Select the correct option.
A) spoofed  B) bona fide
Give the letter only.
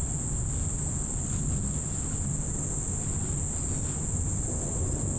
B